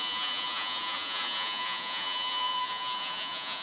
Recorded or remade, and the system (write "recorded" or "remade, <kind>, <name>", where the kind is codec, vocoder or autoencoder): remade, vocoder, Vocos